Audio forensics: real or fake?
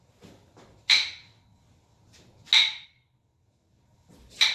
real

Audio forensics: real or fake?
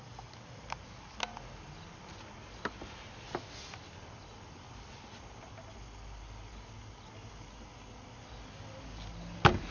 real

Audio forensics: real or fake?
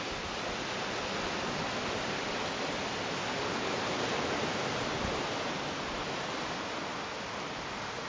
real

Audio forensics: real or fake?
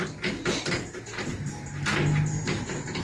real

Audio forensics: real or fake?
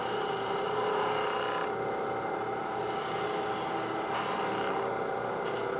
real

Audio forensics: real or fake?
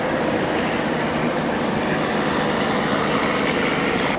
real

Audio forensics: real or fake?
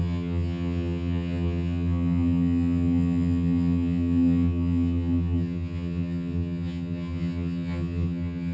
fake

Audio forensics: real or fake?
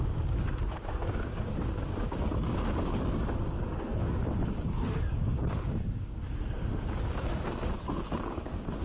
fake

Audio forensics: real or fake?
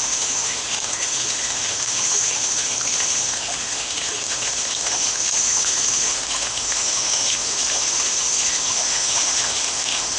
fake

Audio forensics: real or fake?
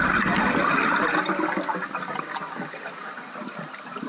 real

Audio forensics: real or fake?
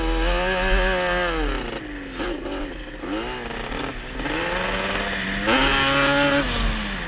real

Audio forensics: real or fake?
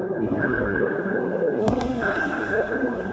fake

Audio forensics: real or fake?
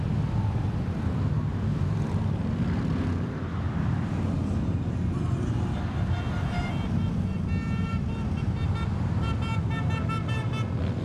real